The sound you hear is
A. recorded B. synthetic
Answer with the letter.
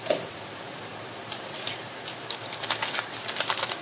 A